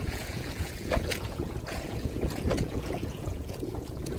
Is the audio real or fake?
fake